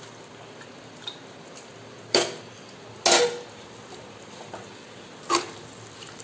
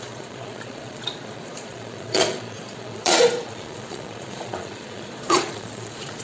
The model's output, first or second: second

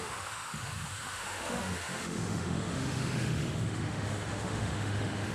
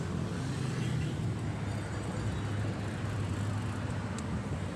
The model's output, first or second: first